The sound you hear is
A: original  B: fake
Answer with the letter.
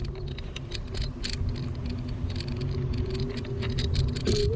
A